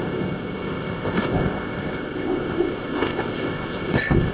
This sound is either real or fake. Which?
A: fake